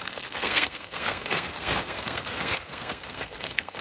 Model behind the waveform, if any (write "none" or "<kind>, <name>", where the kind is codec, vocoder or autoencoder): codec, SNAC